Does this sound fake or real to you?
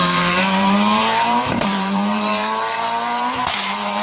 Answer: fake